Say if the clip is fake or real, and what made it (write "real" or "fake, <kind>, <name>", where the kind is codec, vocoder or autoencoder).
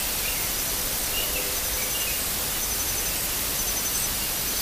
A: real